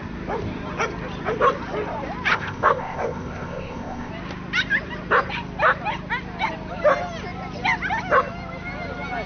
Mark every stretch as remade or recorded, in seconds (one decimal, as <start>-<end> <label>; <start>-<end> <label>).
0.0-2.3 recorded; 2.3-4.1 remade; 4.1-9.3 recorded